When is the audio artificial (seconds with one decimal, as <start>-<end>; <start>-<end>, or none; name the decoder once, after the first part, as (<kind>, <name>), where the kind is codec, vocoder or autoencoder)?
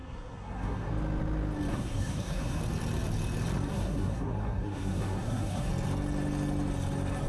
0.0-0.9 (codec, SNAC); 1.7-2.6; 3.7-5.7